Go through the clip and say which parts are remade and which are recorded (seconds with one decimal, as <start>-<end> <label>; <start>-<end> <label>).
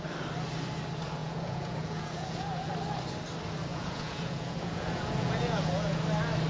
0.0-1.2 recorded; 1.2-2.7 remade; 2.7-3.7 recorded; 3.7-6.0 remade; 6.0-6.5 recorded